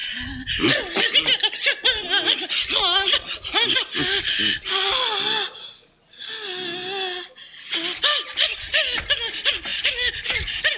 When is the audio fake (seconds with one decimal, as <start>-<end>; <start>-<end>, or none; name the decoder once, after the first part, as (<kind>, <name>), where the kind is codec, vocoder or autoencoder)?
none